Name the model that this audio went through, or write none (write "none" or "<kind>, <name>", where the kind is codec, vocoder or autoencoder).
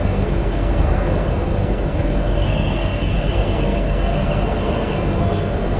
codec, SNAC